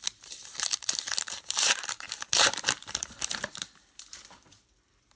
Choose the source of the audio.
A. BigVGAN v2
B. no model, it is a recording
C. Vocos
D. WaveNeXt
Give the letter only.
A